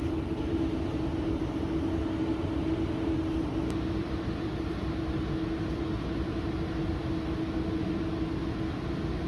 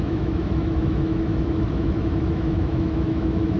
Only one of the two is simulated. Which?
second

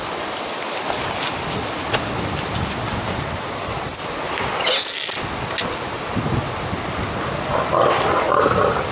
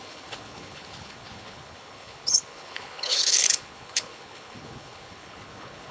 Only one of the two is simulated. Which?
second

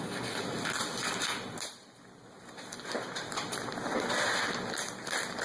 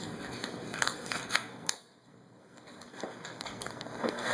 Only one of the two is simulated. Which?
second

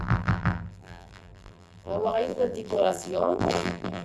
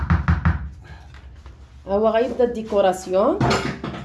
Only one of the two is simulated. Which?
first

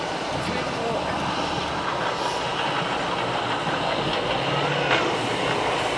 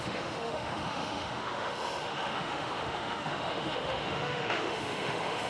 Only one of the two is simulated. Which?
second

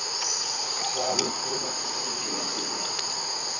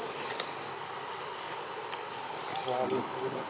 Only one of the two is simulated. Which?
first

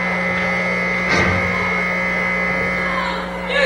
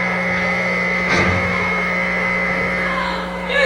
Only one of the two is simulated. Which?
second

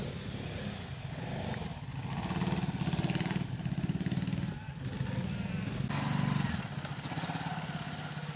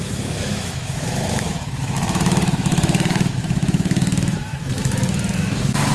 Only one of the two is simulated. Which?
second